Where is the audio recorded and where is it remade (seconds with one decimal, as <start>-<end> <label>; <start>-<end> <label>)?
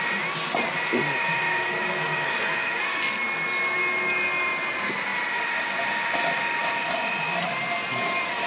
0.0-8.5 recorded